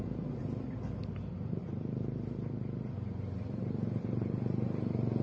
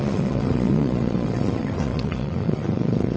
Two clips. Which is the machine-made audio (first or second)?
second